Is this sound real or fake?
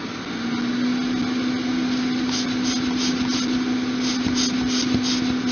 real